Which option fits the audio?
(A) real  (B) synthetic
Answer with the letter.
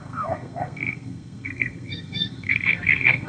B